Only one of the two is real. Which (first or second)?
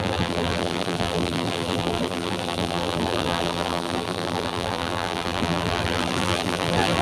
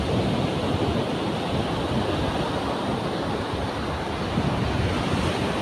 second